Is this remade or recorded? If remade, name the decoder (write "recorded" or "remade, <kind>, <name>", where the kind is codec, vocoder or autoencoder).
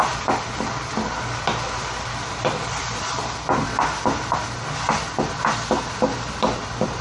recorded